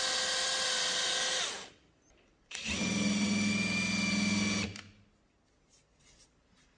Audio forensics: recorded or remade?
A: recorded